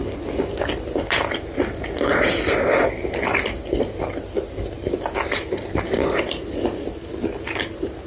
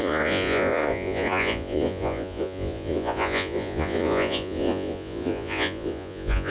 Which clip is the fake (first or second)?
second